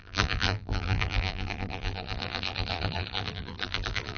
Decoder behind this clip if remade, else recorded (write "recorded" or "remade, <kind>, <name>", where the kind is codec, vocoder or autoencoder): remade, vocoder, BigVGAN v2